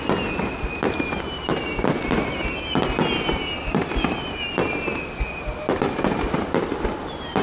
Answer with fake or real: fake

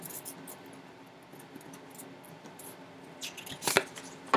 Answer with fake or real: real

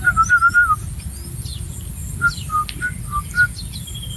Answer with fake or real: real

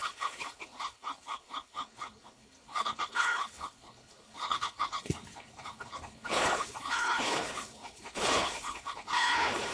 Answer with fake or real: fake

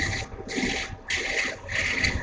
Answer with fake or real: real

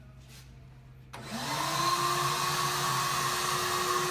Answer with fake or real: real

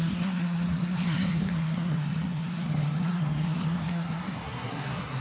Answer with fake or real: fake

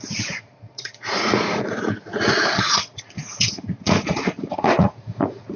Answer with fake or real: fake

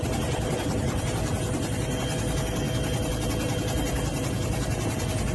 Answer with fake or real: real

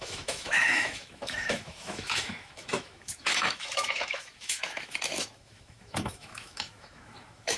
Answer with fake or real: fake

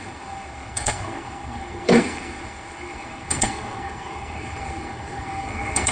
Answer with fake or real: fake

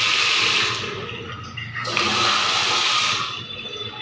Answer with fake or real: real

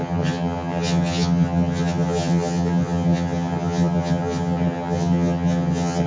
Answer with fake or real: fake